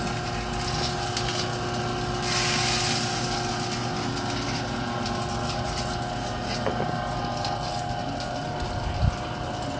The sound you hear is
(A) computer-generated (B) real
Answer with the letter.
B